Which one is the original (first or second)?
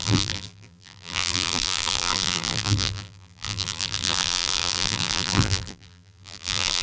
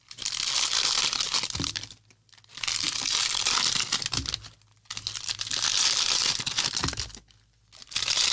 second